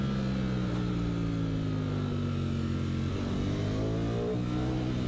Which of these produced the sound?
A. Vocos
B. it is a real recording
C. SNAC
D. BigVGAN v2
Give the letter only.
B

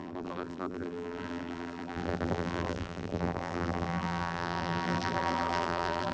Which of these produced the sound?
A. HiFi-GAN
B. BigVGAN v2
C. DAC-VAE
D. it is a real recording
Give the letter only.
B